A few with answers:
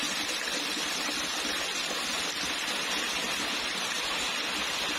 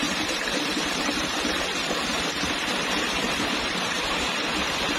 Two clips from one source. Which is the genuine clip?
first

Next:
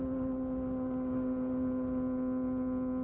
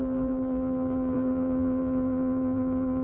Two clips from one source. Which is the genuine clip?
first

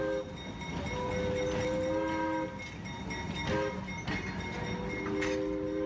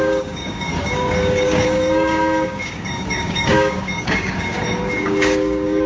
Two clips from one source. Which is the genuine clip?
first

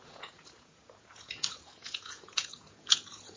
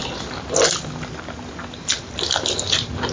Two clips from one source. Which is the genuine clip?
second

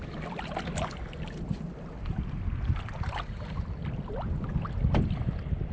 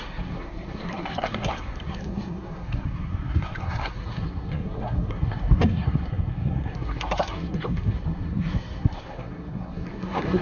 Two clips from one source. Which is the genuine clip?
first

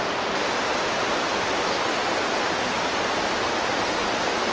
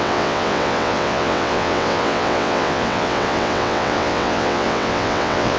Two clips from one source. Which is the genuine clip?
first